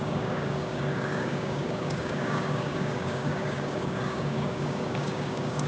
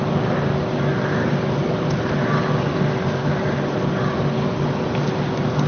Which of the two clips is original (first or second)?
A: second